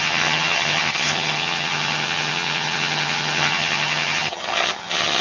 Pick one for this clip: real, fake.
fake